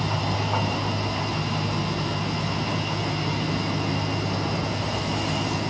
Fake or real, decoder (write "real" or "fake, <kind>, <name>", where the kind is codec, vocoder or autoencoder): real